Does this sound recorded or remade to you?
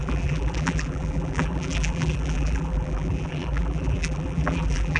remade